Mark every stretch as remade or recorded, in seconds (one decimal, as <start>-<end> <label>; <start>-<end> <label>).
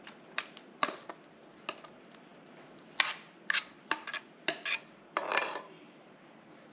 0.0-6.7 recorded